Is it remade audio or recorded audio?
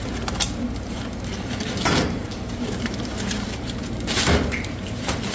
remade